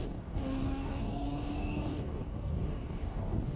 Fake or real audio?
fake